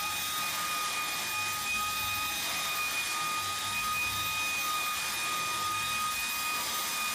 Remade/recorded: recorded